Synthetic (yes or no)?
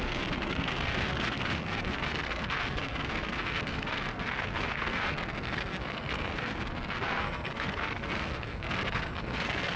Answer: yes